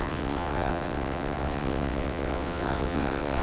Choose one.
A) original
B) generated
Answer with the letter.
B